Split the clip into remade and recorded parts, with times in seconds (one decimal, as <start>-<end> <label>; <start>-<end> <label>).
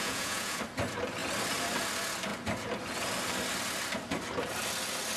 0.0-0.6 remade; 0.6-5.2 recorded